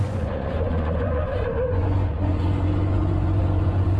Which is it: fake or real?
fake